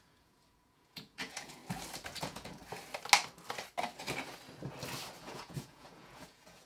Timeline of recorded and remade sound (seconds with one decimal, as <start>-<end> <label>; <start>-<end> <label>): 0.0-1.6 remade; 1.6-2.2 recorded; 2.2-2.6 remade; 2.6-5.2 recorded; 5.2-6.7 remade

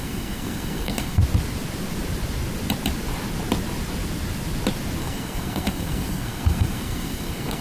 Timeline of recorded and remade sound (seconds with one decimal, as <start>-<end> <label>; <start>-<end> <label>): 0.0-1.2 remade; 1.2-5.0 recorded; 5.0-7.6 remade

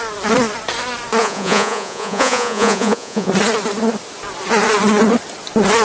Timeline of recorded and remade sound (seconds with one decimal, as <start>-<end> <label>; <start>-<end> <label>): 0.0-1.2 recorded; 1.2-3.3 remade; 3.3-5.8 recorded